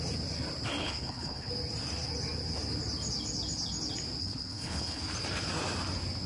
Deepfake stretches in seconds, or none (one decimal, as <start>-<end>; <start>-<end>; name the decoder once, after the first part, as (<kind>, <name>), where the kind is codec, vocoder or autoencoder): 0.8-1.5 (codec, HILCodec); 4.2-5.0